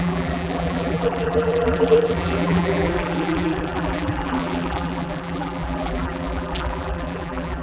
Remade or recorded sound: remade